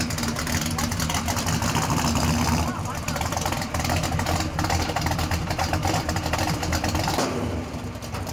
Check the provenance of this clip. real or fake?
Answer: fake